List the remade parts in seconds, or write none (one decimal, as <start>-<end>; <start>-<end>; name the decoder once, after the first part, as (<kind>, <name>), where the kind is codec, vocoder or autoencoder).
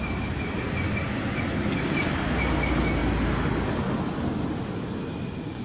none